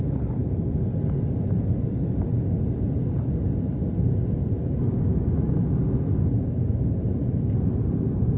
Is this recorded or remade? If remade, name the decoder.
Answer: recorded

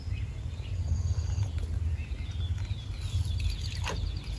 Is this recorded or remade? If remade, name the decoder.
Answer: recorded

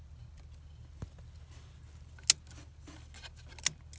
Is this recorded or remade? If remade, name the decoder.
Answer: recorded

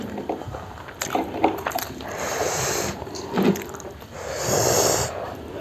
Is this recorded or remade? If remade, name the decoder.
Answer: recorded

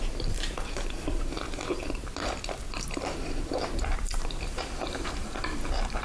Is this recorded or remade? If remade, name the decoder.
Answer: remade, vocoder, BigVGAN v2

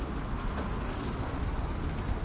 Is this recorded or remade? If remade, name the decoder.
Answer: recorded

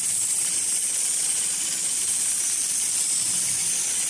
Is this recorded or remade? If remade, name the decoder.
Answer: recorded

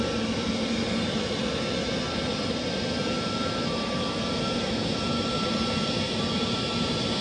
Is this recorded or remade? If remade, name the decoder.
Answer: recorded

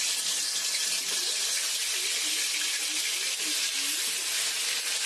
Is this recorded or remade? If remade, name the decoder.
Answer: recorded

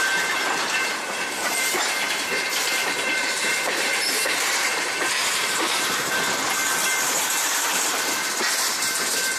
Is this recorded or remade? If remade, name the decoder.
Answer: remade, vocoder, BigVGAN v2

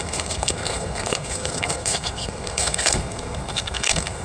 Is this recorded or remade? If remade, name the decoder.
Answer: remade, codec, SNAC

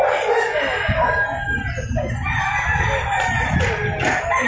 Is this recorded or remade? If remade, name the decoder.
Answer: recorded